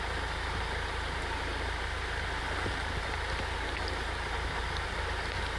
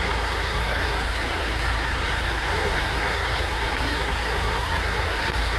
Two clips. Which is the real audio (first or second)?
first